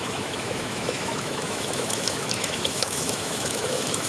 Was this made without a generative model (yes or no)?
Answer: no